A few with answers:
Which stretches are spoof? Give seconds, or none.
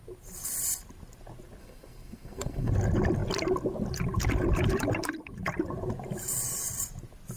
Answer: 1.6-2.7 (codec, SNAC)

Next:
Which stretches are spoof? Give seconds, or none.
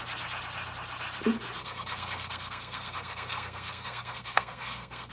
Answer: 1.6-5.1 (codec, SNAC)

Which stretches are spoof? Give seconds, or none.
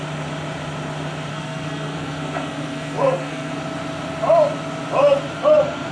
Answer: 1.3-3.5 (codec, SNAC)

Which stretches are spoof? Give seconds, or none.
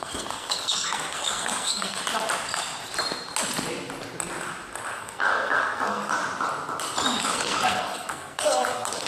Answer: 0.0-2.0 (codec, SNAC); 5.0-6.2; 7.2-9.1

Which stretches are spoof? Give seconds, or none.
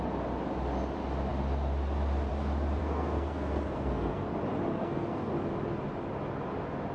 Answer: 2.8-4.3 (codec, SNAC); 4.7-5.3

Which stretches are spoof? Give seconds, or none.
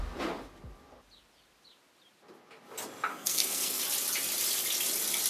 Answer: 3.1-3.8 (codec, SNAC)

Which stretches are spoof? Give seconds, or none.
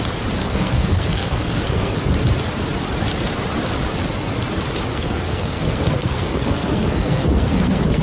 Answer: 0.4-2.0 (codec, SNAC); 4.9-8.0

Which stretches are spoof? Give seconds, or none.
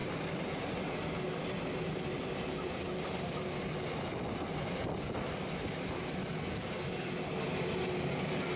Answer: none